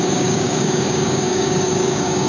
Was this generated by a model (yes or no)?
yes